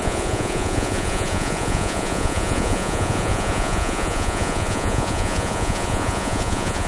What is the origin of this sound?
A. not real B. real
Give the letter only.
A